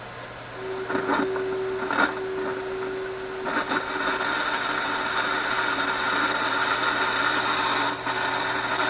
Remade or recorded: recorded